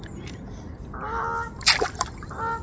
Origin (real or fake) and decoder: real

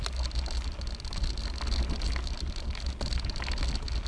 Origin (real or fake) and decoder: real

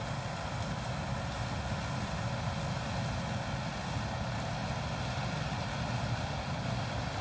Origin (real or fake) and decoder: real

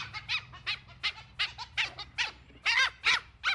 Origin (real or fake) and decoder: real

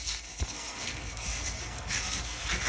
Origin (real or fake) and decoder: fake, codec, SNAC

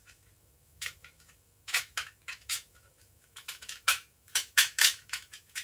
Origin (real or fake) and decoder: fake, autoencoder, DAC-VAE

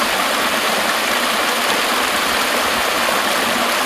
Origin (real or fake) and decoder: real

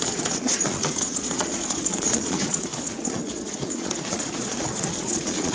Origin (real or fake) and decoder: fake, vocoder, Vocos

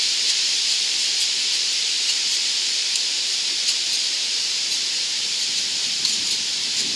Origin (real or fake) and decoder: fake, vocoder, BigVGAN v2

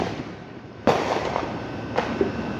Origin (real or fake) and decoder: real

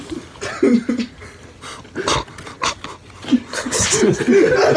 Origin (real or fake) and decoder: real